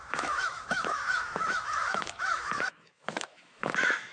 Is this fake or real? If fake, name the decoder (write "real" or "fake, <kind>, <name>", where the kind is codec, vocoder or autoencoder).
fake, autoencoder, DAC-VAE